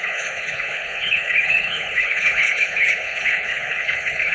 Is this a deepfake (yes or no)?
yes